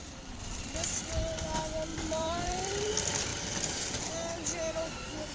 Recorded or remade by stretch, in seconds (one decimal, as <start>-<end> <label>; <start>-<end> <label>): 0.0-0.4 recorded; 0.4-1.0 remade; 1.0-1.9 recorded; 1.9-2.9 remade; 2.9-5.3 recorded